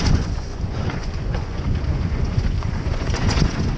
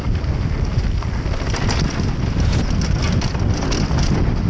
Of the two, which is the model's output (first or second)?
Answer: first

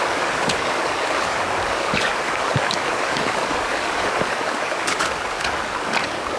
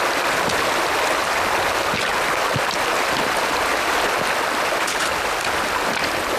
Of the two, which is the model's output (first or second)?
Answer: first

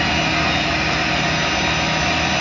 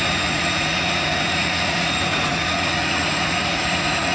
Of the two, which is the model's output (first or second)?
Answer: second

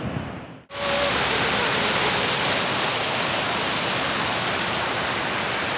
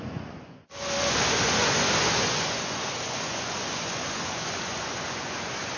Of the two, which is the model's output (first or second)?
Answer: second